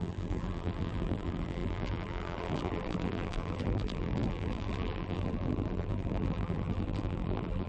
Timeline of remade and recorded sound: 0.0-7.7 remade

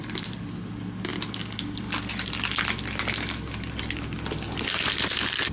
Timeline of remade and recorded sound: 0.0-0.7 remade; 0.7-5.5 recorded

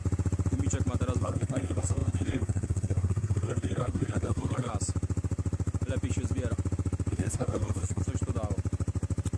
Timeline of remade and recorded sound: 0.0-1.2 recorded; 1.2-4.7 remade; 4.7-7.1 recorded; 7.1-8.0 remade; 8.0-9.4 recorded

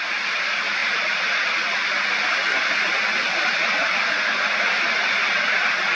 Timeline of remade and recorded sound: 0.0-5.9 recorded